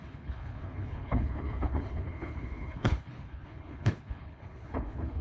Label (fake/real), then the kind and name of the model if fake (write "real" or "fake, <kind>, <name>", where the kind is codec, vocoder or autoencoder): fake, codec, HILCodec